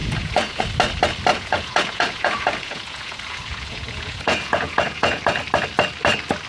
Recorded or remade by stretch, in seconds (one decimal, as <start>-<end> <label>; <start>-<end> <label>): 0.0-0.6 remade; 0.6-1.3 recorded; 1.3-5.2 remade; 5.2-6.5 recorded